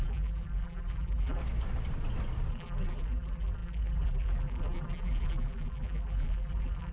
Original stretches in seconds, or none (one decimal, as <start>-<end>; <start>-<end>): 1.4-2.5